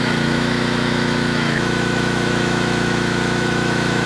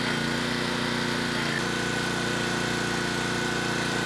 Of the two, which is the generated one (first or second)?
first